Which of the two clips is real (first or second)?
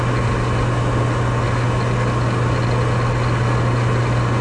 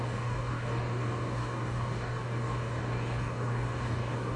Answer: first